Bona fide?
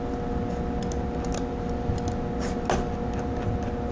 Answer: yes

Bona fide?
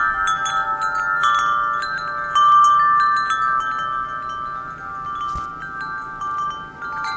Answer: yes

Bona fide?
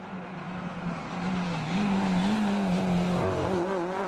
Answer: yes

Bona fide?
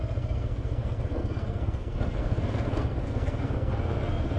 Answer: no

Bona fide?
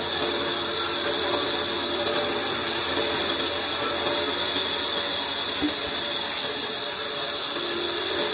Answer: yes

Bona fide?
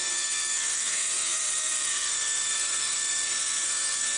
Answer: no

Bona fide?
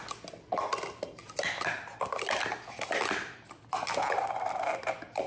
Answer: yes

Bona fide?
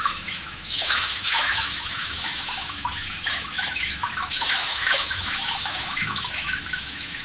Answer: no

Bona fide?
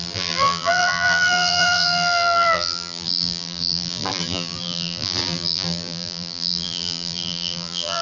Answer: no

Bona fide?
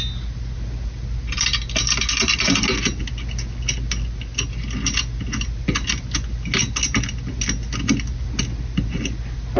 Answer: yes